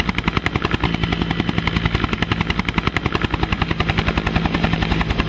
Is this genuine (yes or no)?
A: yes